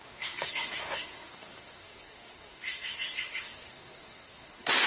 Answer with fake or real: fake